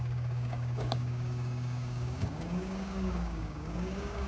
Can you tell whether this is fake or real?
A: fake